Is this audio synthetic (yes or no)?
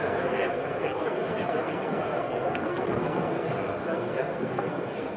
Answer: yes